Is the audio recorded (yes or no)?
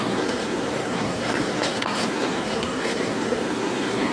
no